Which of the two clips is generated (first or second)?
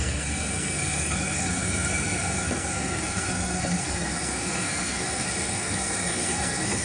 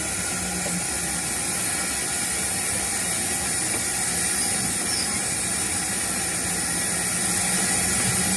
first